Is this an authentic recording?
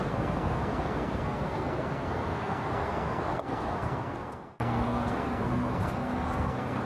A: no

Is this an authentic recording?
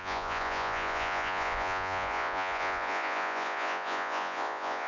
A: no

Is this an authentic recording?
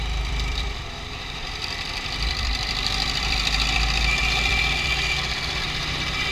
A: no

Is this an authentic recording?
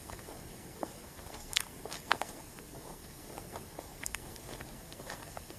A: no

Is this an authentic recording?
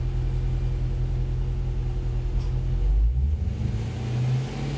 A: yes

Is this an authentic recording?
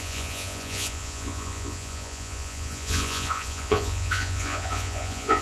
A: no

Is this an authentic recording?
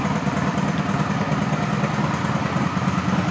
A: yes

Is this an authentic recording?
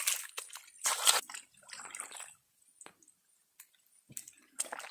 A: yes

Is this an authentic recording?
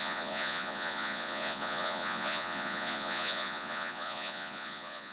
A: no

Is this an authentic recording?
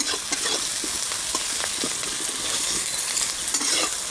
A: yes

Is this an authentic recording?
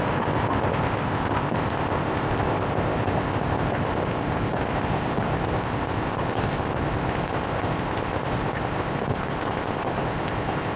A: no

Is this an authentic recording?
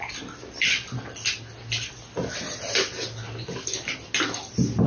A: yes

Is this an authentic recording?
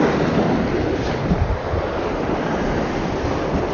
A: no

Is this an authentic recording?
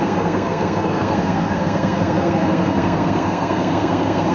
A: no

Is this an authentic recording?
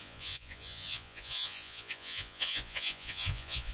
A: no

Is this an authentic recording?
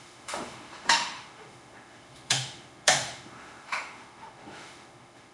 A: no